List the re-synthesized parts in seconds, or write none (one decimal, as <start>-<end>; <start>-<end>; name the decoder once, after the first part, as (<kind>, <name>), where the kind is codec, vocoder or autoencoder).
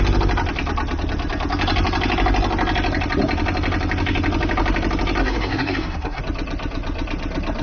5.2-6.2 (codec, SNAC)